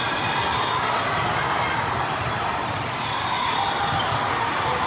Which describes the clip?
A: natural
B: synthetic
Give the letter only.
A